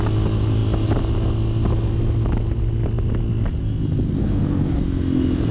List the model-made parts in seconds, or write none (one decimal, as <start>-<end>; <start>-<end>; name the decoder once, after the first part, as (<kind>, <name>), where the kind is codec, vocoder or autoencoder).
4.2-4.8 (codec, SNAC)